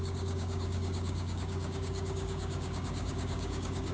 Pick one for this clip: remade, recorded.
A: remade